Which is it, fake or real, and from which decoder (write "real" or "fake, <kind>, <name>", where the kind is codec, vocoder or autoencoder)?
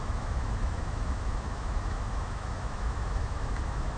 fake, autoencoder, DAC-VAE